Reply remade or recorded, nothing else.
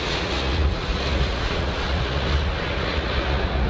remade